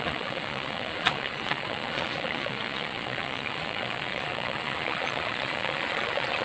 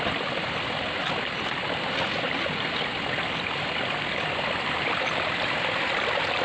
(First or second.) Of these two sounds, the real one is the second